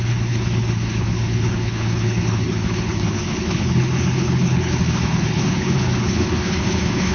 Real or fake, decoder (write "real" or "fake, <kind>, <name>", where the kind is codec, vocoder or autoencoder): fake, codec, HILCodec